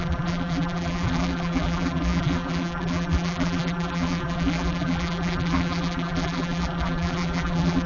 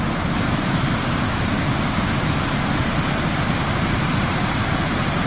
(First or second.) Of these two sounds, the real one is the second